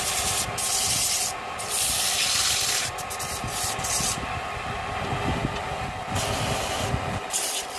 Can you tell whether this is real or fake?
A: real